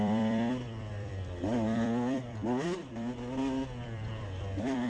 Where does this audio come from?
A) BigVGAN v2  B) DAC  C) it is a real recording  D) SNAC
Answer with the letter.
A